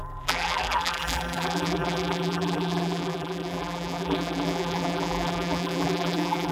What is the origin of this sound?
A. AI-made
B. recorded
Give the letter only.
A